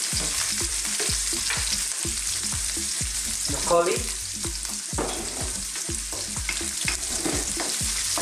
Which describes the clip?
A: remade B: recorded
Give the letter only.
A